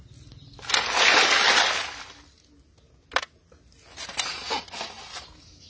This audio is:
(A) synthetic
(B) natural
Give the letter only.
B